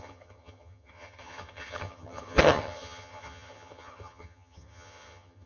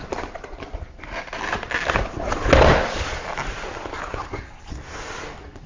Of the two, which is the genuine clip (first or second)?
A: second